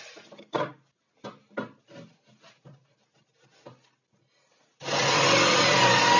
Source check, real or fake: real